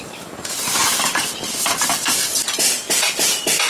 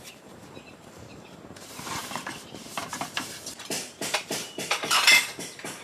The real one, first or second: first